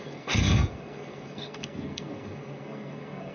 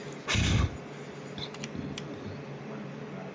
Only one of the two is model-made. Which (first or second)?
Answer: first